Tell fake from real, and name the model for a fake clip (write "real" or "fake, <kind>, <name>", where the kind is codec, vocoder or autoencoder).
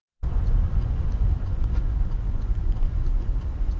fake, vocoder, Vocos